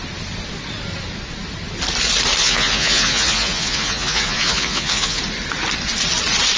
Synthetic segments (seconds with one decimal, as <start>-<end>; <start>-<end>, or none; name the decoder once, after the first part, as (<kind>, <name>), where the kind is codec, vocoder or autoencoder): 2.4-5.2 (vocoder, Vocos)